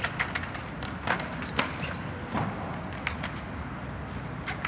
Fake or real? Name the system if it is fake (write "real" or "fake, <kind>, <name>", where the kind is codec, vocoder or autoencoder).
real